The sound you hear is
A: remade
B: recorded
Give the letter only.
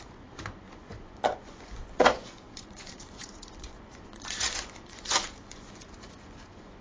A